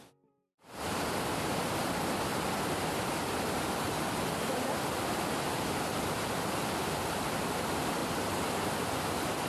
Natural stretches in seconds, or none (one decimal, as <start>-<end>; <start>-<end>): 0.0-9.5